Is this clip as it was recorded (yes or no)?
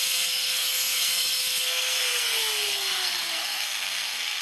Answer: no